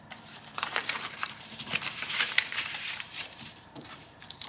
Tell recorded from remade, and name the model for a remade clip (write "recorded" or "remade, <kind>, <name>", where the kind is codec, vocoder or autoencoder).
remade, vocoder, BigVGAN v2